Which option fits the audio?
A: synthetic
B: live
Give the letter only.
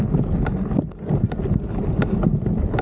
B